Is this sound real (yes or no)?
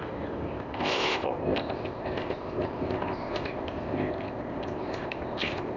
no